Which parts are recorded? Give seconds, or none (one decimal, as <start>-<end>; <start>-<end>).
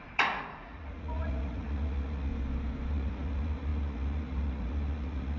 2.3-2.9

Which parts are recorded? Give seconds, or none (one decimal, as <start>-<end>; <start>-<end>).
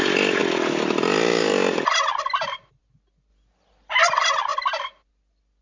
0.0-5.6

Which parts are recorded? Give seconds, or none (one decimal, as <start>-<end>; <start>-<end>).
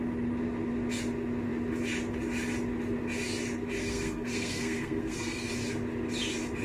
0.0-3.8; 5.5-6.6